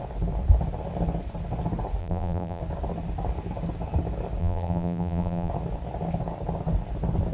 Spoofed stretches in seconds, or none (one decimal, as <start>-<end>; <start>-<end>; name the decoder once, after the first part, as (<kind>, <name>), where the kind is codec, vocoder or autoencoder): 2.0-2.6 (vocoder, BigVGAN v2); 4.4-5.5

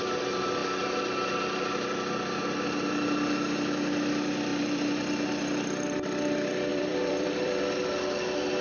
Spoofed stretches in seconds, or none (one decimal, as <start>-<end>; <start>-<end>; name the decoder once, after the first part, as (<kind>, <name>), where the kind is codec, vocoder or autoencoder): 4.5-5.0 (vocoder, BigVGAN v2); 6.7-7.6